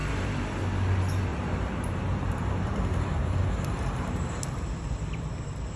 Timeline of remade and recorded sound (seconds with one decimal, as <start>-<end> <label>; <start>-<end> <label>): 0.0-0.6 remade; 0.6-1.3 recorded; 1.3-4.3 remade; 4.3-5.8 recorded